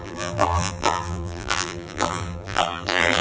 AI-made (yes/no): yes